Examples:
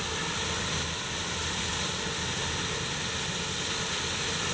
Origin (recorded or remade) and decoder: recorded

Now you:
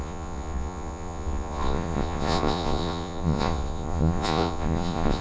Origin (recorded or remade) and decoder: remade, vocoder, Vocos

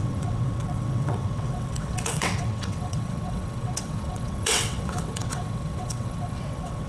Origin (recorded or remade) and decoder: remade, vocoder, WaveNeXt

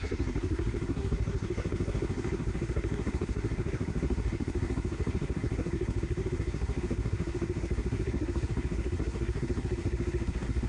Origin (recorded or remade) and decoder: remade, codec, SNAC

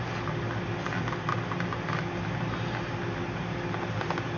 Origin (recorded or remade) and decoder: recorded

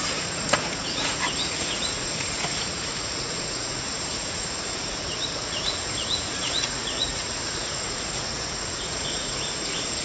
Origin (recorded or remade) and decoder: remade, vocoder, Vocos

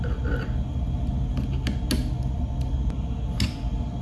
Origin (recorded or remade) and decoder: recorded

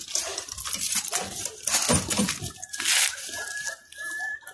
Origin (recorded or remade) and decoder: recorded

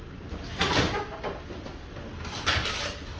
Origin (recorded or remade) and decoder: recorded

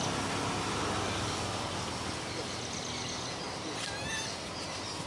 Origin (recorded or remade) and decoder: recorded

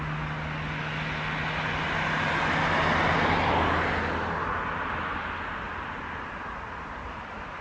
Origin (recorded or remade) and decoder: recorded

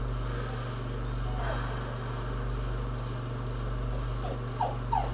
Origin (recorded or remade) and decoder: recorded